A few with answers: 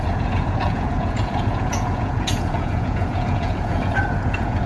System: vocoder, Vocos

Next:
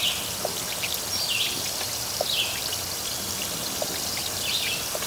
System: none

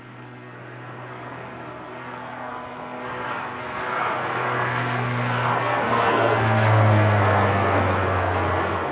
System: codec, SNAC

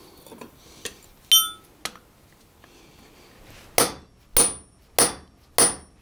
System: none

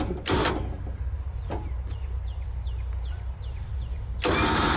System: vocoder, BigVGAN v2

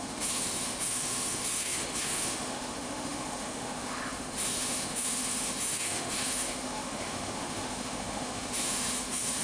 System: autoencoder, DAC-VAE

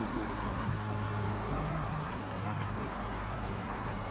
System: codec, SNAC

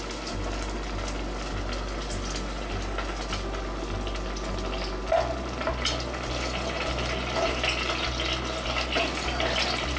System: none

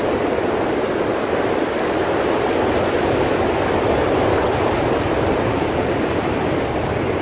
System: none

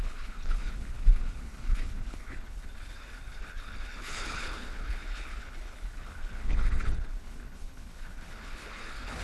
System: codec, HILCodec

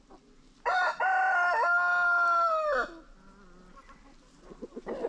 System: none